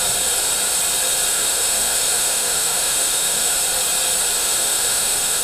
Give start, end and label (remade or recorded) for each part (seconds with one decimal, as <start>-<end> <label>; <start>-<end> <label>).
0.0-1.3 recorded; 1.3-3.6 remade; 3.6-4.4 recorded; 4.4-5.4 remade